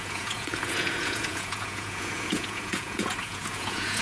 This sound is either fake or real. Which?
fake